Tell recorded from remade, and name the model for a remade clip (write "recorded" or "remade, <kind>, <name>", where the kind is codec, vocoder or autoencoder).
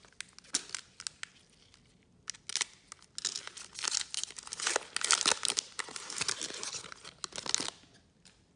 recorded